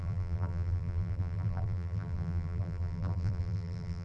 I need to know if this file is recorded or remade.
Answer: remade